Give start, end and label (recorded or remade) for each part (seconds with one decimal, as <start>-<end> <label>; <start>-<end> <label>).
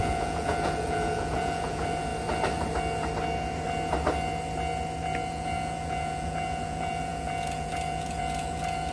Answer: 0.0-2.1 remade; 2.1-5.3 recorded; 5.3-8.9 remade